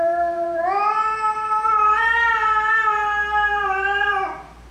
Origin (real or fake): fake